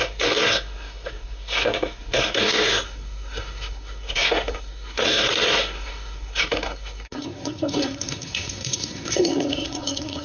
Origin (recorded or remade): remade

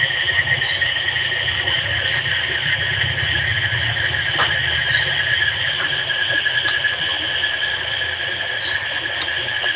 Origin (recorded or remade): recorded